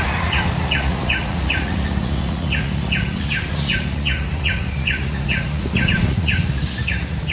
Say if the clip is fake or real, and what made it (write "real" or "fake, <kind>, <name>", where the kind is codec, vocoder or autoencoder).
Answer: fake, vocoder, Vocos